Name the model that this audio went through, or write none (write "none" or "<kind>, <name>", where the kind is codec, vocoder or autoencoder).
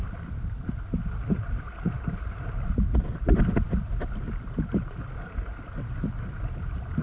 none